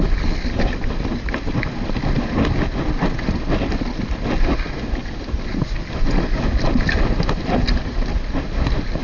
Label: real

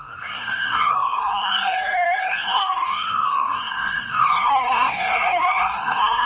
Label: fake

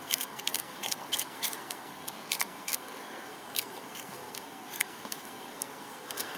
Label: fake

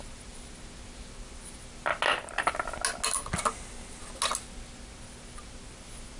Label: real